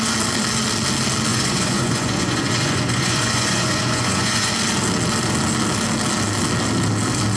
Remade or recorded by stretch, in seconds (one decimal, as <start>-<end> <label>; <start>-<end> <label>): 0.0-1.3 recorded; 1.3-4.5 remade; 4.5-7.4 recorded